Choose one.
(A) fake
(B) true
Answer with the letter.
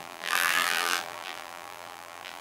A